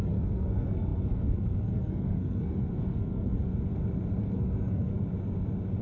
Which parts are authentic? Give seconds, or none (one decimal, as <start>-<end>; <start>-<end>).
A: 3.5-4.2; 4.9-5.8